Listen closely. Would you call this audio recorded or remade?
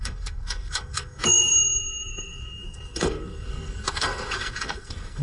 remade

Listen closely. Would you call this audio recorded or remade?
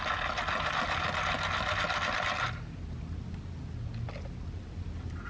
recorded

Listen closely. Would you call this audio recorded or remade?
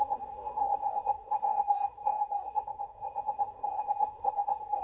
remade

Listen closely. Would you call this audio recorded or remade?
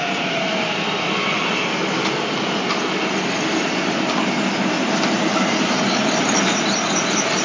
recorded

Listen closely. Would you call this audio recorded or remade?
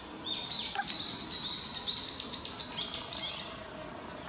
recorded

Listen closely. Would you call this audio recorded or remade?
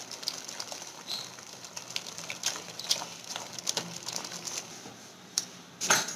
recorded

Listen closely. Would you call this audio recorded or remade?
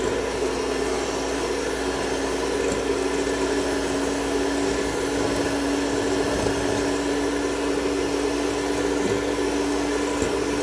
recorded